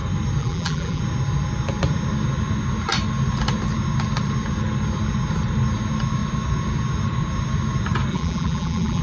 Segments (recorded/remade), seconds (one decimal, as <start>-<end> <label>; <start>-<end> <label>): 0.0-0.4 recorded; 0.4-1.0 remade; 1.0-8.1 recorded; 8.1-9.0 remade